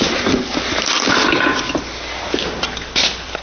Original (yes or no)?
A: yes